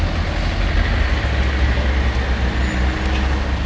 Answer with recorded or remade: recorded